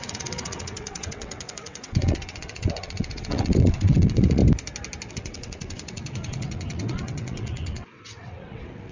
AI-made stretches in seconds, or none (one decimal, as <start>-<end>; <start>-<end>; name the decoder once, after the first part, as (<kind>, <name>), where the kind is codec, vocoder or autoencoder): 0.0-4.4 (vocoder, WaveNeXt); 5.1-8.9